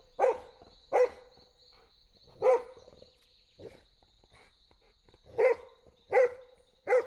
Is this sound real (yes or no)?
no